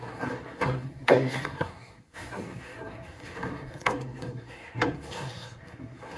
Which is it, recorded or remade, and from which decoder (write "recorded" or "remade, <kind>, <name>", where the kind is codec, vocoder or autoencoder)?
remade, codec, SNAC